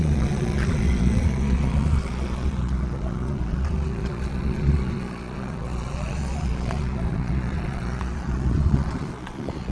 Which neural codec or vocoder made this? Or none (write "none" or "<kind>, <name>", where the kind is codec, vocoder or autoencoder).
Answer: vocoder, Vocos